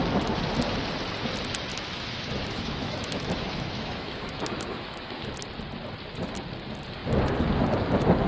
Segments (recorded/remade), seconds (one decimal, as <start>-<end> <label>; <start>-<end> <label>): 0.0-1.7 recorded; 1.7-5.3 remade; 5.3-8.3 recorded